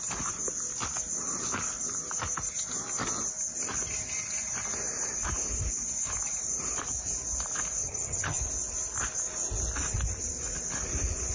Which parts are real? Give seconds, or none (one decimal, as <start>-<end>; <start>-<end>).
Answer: 0.0-7.8; 8.4-11.3